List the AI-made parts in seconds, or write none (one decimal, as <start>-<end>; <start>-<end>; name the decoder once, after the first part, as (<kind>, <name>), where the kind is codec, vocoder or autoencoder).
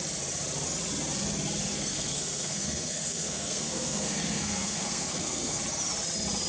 1.7-5.6 (codec, SNAC)